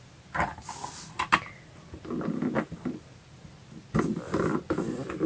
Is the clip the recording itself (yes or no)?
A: yes